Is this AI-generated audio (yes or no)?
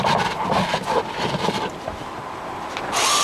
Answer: no